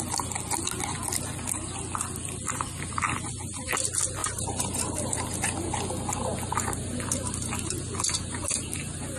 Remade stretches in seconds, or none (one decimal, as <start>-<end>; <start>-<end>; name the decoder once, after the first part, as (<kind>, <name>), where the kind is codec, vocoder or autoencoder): 4.2-5.5 (vocoder, BigVGAN v2)